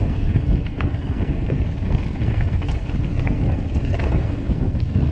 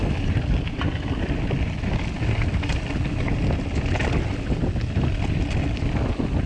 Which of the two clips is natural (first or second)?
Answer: second